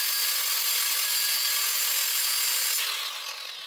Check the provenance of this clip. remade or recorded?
recorded